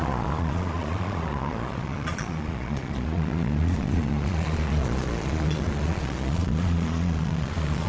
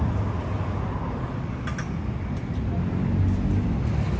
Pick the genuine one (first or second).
second